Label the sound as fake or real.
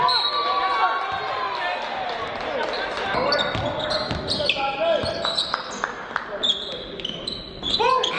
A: real